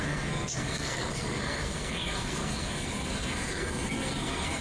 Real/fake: fake